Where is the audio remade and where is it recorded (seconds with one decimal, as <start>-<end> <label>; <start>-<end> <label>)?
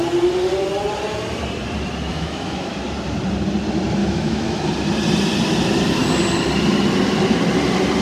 0.0-2.1 recorded; 2.1-2.7 remade; 2.7-4.0 recorded; 4.0-4.7 remade; 4.7-8.0 recorded